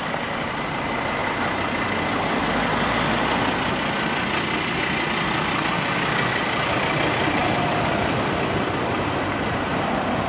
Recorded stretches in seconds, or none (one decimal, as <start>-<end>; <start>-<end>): 0.0-10.3